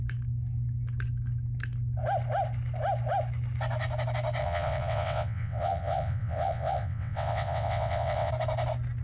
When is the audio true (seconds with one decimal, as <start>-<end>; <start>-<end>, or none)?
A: 0.0-4.4; 8.3-9.0